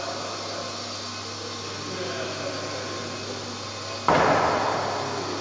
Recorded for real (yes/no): yes